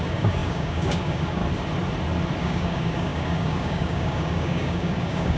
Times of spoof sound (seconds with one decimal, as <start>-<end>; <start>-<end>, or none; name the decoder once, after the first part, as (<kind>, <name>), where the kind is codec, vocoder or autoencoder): 0.0-1.4 (codec, DAC); 2.4-5.4